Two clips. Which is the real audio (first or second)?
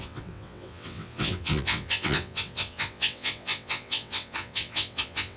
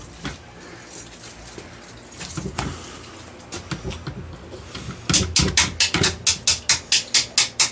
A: second